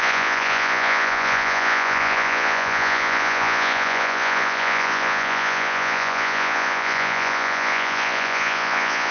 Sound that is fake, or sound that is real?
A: fake